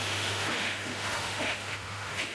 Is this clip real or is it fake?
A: fake